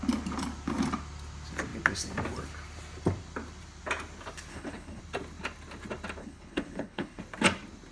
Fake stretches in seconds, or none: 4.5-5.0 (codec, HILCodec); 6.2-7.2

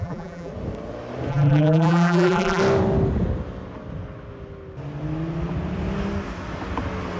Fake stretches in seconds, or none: 0.0-0.5 (vocoder, BigVGAN v2); 1.3-2.6

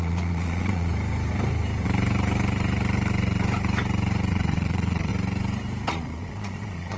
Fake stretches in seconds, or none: 0.0-0.9 (vocoder, Vocos); 4.3-5.1; 5.9-7.0

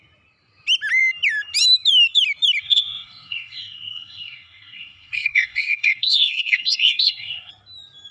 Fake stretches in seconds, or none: 2.6-7.5 (codec, SNAC)

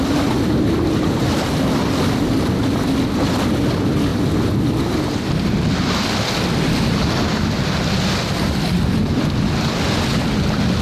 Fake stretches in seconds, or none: none

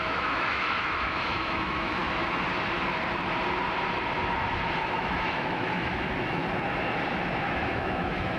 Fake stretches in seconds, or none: 0.0-2.0 (autoencoder, DAC-VAE); 5.0-6.4; 7.4-8.4

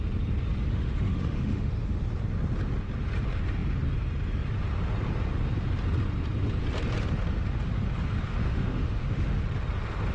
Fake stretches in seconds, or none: 0.7-2.0 (autoencoder, DAC-VAE); 8.4-9.4